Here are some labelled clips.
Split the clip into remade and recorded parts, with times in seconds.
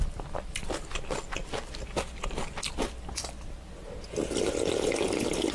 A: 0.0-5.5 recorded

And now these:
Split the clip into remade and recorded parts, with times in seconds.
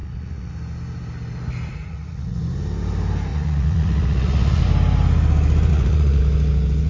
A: 0.0-0.5 remade; 0.5-1.7 recorded; 1.7-2.4 remade; 2.4-3.3 recorded; 3.3-4.6 remade; 4.6-5.7 recorded; 5.7-6.2 remade; 6.2-6.9 recorded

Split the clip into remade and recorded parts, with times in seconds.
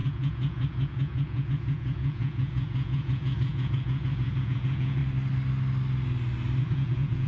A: 0.0-5.0 remade; 5.0-6.6 recorded; 6.6-7.3 remade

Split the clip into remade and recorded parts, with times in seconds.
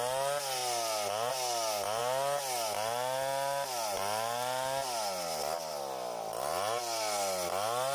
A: 0.0-7.9 recorded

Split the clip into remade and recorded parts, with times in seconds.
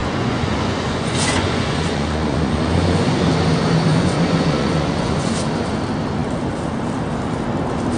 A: 0.0-3.3 remade; 3.3-3.9 recorded; 3.9-5.3 remade; 5.3-8.0 recorded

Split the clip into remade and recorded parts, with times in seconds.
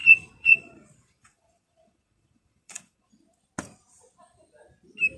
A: 0.0-3.1 remade; 3.1-5.2 recorded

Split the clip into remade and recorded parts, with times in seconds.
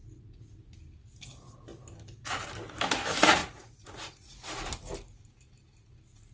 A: 0.0-3.4 recorded; 3.4-4.7 remade; 4.7-6.3 recorded